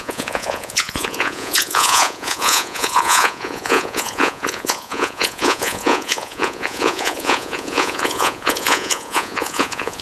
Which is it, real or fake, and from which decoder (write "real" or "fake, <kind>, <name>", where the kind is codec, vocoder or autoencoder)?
fake, vocoder, Vocos